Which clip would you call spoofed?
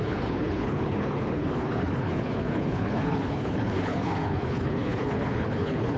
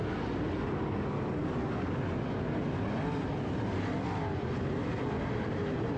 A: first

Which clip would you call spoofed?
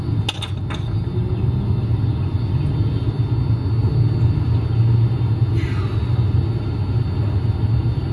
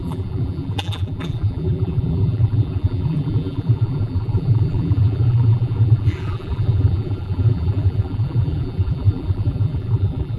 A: second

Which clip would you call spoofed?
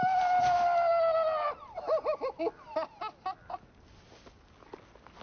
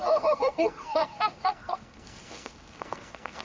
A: second